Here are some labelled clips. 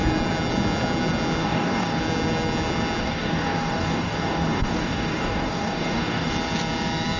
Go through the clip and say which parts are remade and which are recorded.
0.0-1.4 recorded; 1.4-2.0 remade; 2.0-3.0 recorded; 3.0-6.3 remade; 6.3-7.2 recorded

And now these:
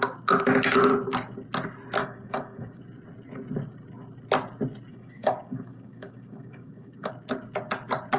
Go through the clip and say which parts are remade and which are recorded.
0.0-2.0 recorded; 2.0-2.8 remade; 2.8-4.9 recorded; 4.9-7.1 remade; 7.1-8.2 recorded

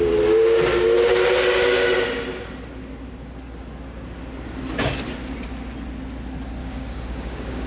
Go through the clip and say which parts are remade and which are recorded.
0.0-6.6 recorded; 6.6-7.7 remade